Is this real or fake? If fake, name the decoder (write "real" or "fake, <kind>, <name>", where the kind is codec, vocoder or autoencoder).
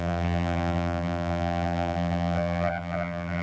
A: fake, vocoder, BigVGAN v2